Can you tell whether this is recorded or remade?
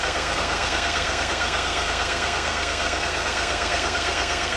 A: remade